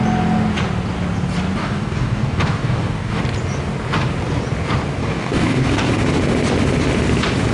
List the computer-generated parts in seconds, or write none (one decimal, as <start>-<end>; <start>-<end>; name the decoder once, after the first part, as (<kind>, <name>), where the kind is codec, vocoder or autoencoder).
1.6-3.2 (codec, DAC); 5.0-5.9